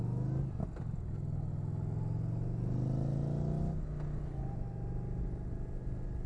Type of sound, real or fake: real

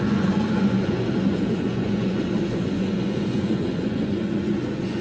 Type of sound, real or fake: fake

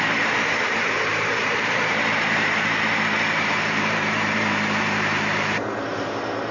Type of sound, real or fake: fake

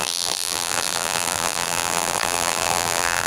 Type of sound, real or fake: fake